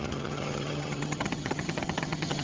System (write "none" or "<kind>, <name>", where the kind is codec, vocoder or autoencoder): vocoder, HiFi-GAN